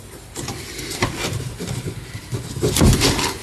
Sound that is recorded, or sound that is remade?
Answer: recorded